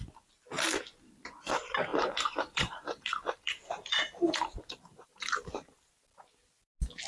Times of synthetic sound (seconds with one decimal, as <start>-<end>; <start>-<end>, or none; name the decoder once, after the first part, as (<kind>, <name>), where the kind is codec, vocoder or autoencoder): 1.9-5.9 (vocoder, BigVGAN v2)